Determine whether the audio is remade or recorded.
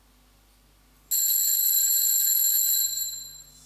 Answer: recorded